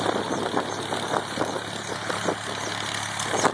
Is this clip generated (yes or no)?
no